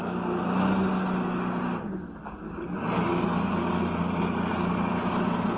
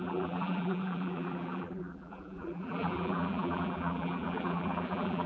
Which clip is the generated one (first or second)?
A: second